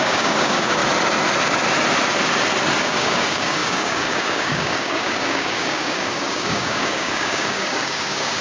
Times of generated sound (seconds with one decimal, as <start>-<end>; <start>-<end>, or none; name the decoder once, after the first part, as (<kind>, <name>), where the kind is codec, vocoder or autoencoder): 0.0-0.8 (codec, DAC); 2.8-8.4